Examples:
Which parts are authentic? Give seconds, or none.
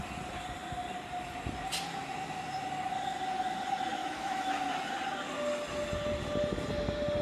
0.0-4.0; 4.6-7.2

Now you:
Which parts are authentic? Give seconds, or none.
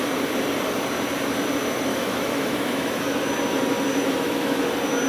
0.0-1.9; 2.9-4.0; 4.6-5.1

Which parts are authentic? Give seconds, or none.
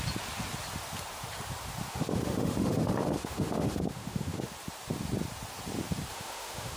0.0-1.9; 4.5-6.1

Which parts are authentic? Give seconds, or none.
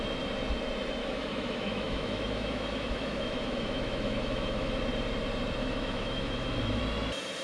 0.0-1.0; 4.8-5.6; 6.8-7.4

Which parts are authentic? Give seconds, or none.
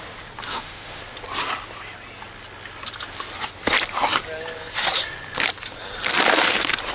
0.0-0.5; 1.0-6.9